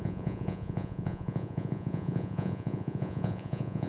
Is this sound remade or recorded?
remade